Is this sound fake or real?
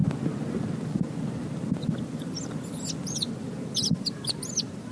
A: real